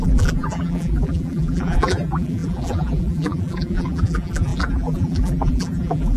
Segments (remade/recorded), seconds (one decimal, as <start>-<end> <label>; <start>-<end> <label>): 0.0-6.2 remade